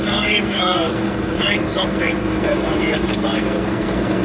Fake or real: fake